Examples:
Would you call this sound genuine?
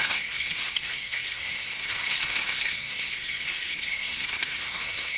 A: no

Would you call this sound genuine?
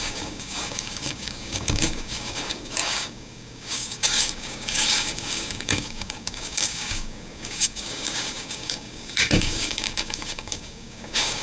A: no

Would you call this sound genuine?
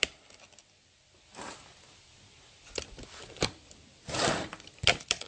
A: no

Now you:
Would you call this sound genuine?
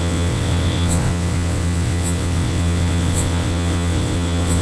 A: no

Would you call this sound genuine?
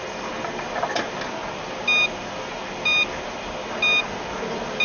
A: yes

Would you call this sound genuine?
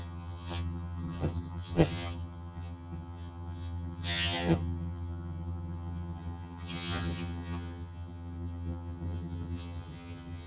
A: no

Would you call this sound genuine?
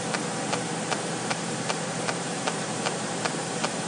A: no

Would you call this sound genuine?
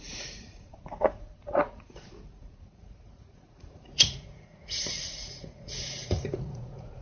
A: no